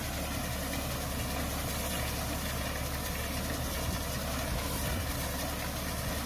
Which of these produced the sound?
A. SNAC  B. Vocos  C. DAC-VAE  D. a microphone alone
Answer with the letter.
D